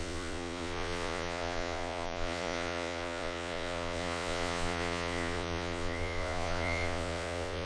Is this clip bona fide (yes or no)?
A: no